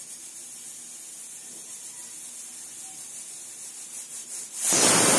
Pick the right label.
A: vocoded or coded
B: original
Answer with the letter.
B